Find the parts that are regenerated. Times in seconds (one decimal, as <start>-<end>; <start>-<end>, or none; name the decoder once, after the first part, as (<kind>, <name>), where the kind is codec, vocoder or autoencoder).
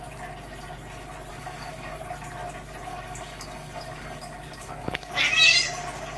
1.3-2.0 (codec, DAC); 2.9-5.1